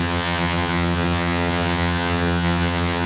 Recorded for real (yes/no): no